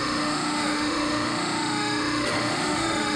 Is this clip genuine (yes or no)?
no